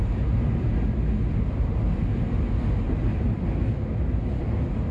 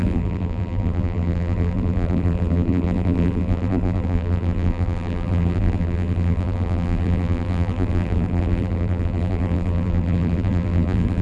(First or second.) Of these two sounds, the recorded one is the first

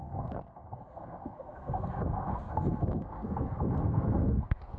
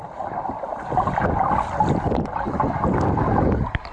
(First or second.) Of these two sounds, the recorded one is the second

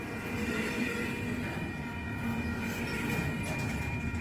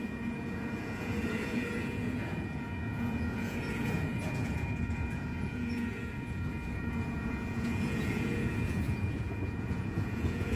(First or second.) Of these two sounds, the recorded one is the first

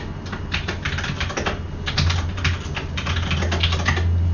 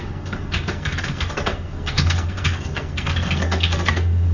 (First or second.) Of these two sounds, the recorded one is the first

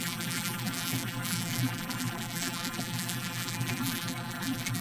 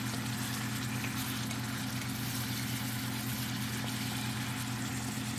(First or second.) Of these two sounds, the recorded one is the second